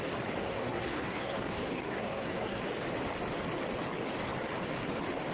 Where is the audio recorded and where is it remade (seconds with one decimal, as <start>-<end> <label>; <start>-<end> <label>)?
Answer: 0.0-0.4 recorded; 0.4-2.6 remade; 2.6-5.3 recorded